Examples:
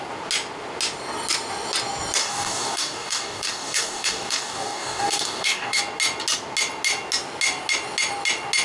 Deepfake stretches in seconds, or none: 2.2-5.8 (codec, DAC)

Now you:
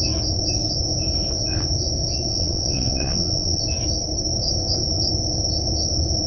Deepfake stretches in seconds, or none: 2.3-3.6 (vocoder, WaveNeXt)

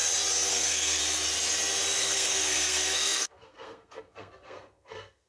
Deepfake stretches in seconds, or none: 0.5-1.0 (codec, SNAC); 2.0-5.3

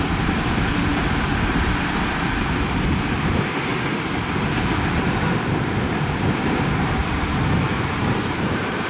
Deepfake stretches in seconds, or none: 0.0-3.7 (vocoder, BigVGAN v2); 5.8-7.0; 7.6-8.9

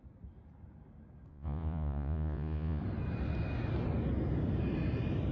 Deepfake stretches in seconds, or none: 1.3-2.8 (vocoder, Vocos)

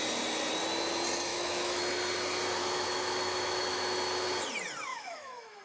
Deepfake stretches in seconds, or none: 1.3-1.8 (autoencoder, DAC-VAE); 2.6-3.8; 4.9-5.6